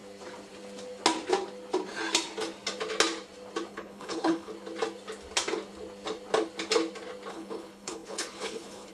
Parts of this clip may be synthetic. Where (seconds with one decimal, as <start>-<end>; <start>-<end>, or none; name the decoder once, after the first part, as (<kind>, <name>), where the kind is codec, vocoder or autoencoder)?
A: 3.7-4.5 (codec, HILCodec); 7.3-8.9